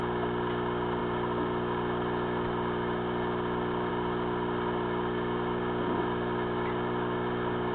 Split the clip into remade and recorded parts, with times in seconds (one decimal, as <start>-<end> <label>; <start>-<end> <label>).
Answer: 0.0-7.7 recorded